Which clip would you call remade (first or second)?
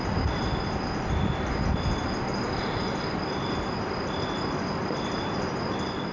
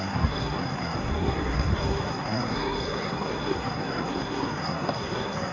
second